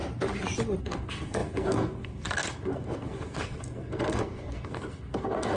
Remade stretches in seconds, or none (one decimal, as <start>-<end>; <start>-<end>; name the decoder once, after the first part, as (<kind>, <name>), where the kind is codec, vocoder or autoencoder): 0.8-5.6 (codec, SNAC)